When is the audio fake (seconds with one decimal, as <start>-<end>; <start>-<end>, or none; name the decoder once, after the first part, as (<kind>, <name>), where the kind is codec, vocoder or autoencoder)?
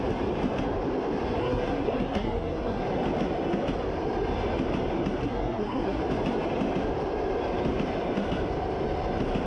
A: 1.4-2.8 (codec, SNAC); 5.2-6.0